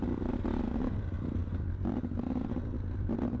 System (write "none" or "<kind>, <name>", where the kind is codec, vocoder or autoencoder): none